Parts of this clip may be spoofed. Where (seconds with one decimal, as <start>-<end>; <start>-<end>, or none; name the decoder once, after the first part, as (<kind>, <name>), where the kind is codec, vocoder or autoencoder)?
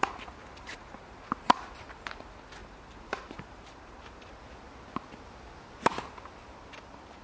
0.0-1.8 (vocoder, BigVGAN v2); 2.6-4.3